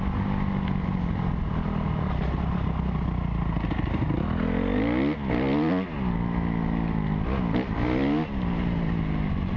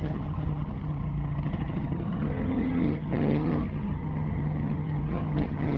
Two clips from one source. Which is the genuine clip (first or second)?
first